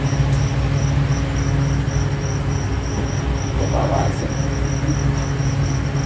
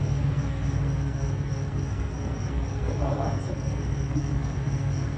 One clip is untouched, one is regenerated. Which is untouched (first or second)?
first